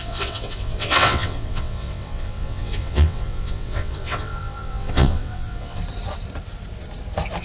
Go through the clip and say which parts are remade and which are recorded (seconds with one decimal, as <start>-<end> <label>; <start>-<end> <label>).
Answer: 0.0-5.8 remade; 5.8-7.4 recorded